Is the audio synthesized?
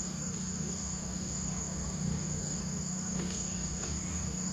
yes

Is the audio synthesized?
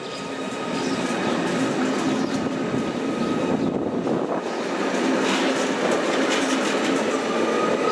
no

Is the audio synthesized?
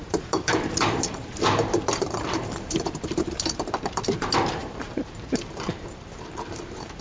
yes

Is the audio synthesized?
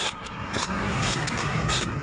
yes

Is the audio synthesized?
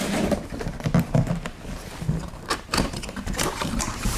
yes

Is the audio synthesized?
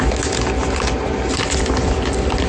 no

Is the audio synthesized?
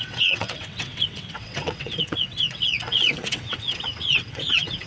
yes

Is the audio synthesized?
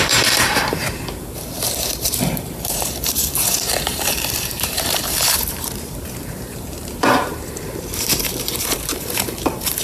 yes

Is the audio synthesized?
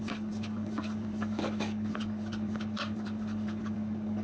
yes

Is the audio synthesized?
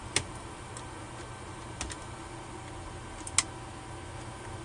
no